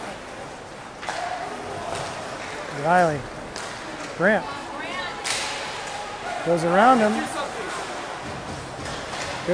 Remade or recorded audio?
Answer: recorded